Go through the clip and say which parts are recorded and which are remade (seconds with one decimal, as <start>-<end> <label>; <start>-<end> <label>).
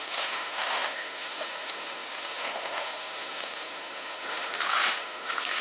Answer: 0.0-5.6 remade